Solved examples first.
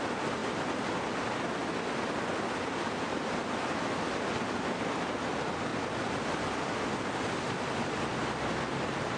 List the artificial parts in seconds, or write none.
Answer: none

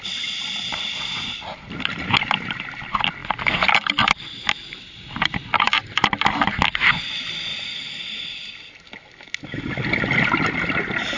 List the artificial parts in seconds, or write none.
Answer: 7.5-8.0 (vocoder, Vocos)

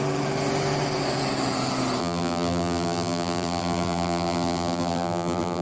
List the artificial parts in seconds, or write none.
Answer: 2.0-5.6 (vocoder, BigVGAN v2)

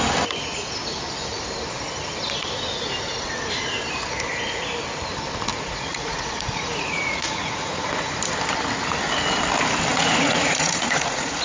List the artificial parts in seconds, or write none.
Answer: 5.5-8.1 (vocoder, Vocos); 9.9-11.4